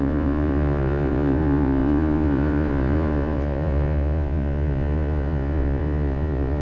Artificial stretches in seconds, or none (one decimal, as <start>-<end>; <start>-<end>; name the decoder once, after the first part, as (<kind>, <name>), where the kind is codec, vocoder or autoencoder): 0.0-6.6 (vocoder, Vocos)